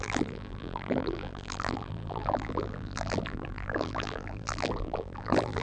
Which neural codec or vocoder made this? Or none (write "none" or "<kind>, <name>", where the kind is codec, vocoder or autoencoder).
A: vocoder, BigVGAN v2